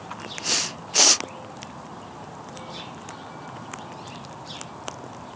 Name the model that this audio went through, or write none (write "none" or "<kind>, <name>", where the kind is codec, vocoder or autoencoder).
none